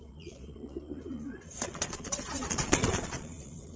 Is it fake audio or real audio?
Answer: fake